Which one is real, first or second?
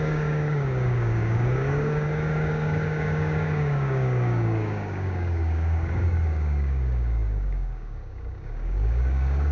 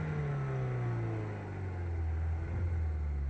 second